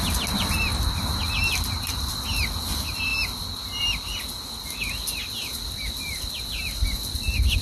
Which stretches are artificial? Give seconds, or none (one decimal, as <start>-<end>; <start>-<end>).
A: none